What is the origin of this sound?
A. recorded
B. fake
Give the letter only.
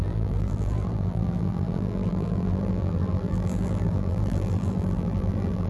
B